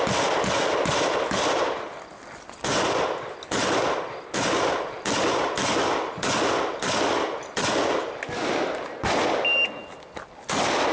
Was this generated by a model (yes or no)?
no